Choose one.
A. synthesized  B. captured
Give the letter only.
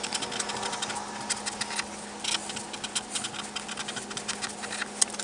B